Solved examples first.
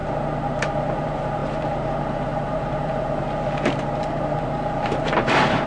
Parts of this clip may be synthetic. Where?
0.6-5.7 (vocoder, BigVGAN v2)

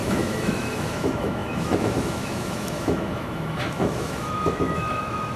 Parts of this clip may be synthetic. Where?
0.0-5.4 (autoencoder, DAC-VAE)

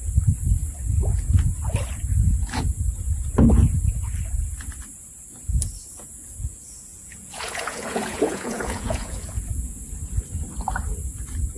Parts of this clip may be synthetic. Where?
5.9-9.8 (vocoder, Vocos)

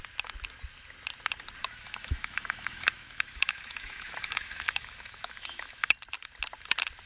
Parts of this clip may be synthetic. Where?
1.6-5.9 (autoencoder, DAC-VAE)

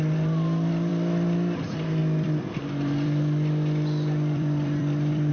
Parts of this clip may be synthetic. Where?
0.0-5.3 (vocoder, BigVGAN v2)

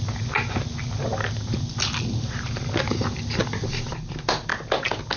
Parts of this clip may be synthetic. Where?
none